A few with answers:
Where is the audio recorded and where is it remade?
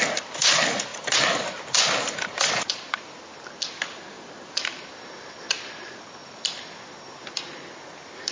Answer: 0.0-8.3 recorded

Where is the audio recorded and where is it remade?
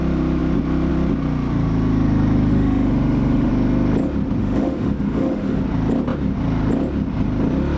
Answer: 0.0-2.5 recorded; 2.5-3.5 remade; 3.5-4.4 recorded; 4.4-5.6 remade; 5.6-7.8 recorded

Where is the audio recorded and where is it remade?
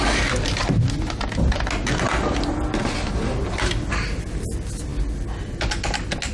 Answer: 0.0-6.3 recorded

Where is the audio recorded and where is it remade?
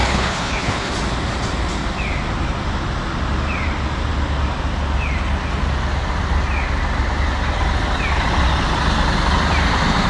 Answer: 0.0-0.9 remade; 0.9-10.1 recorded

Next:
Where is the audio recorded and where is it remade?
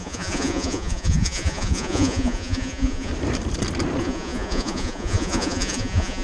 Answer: 0.0-3.1 remade; 3.1-4.0 recorded; 4.0-6.2 remade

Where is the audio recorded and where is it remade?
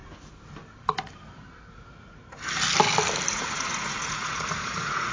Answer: 0.0-1.7 recorded; 1.7-2.2 remade; 2.2-3.3 recorded; 3.3-5.1 remade